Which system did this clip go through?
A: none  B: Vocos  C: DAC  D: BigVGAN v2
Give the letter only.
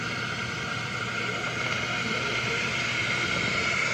A